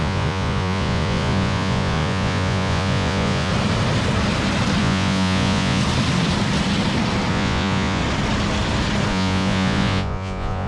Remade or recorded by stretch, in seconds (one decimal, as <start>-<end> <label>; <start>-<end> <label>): 0.0-3.5 remade; 3.5-4.8 recorded; 4.8-5.8 remade; 5.8-7.3 recorded; 7.3-8.0 remade; 8.0-9.1 recorded; 9.1-10.7 remade